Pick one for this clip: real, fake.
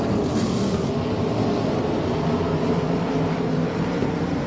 real